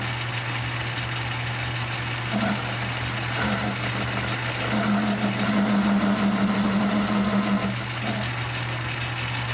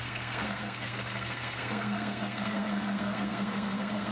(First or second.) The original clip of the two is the first